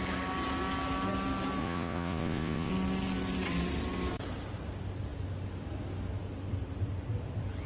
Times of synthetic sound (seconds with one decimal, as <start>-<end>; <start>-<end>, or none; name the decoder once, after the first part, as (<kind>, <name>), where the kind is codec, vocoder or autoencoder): 1.6-2.7 (vocoder, Vocos)